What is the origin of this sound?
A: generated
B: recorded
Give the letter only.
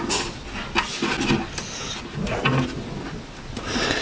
B